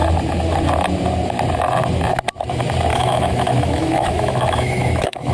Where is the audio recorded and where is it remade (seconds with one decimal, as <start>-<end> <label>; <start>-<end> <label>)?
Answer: 0.0-2.9 recorded; 2.9-5.3 remade